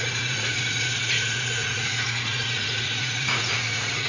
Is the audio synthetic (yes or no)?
yes